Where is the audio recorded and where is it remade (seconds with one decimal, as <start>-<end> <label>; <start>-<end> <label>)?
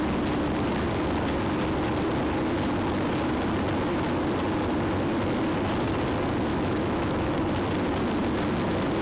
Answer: 0.0-6.5 recorded; 6.5-7.4 remade; 7.4-9.0 recorded